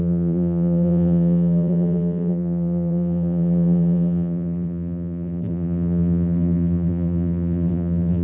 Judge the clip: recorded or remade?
remade